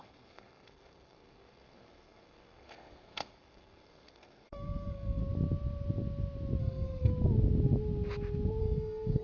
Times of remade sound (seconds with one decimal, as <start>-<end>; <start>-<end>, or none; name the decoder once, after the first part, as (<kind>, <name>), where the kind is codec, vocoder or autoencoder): 0.0-5.2 (codec, SNAC); 6.6-7.1; 8.6-9.2